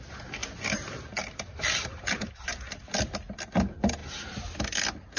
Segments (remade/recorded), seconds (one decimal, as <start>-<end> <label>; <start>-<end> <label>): 0.0-5.2 recorded